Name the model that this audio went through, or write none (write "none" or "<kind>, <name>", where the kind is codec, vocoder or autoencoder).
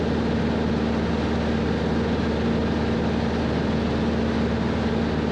none